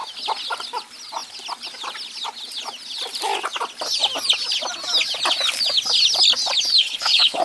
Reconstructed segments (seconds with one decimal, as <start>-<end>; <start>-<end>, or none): 6.8-7.4